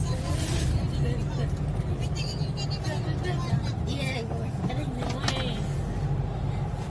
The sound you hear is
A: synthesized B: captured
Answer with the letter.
B